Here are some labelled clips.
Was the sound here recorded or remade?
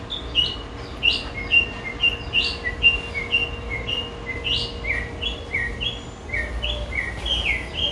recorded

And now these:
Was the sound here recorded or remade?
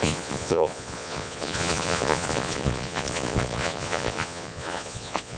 remade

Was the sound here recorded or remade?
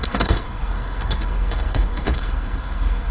remade